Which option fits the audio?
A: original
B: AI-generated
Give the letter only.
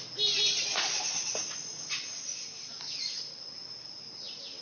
A